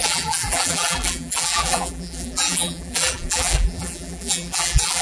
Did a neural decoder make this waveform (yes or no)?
yes